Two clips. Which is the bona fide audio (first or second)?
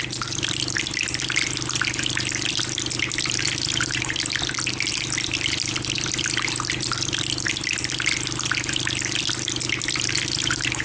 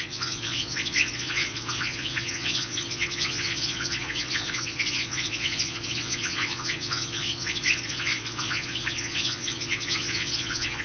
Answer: first